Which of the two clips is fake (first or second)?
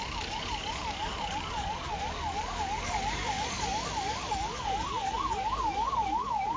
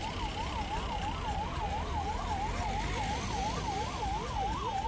first